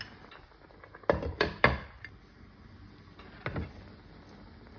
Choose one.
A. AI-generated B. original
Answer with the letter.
B